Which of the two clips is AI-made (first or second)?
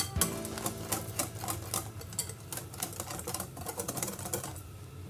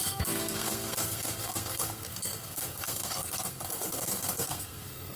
second